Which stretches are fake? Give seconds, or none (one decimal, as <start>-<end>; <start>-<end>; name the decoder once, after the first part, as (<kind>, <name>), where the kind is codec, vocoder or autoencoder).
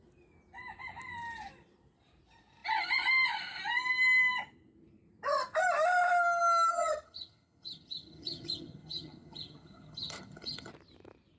6.7-10.7 (vocoder, HiFi-GAN)